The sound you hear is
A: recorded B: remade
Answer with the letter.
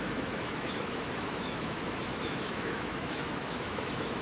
B